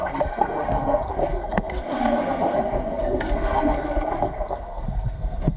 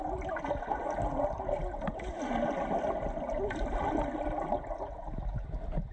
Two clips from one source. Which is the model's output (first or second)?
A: first